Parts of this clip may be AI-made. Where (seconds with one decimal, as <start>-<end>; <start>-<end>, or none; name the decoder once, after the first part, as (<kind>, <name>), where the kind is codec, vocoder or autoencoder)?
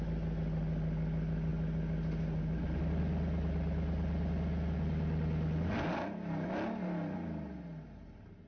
none